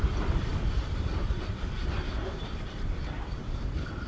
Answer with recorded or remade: recorded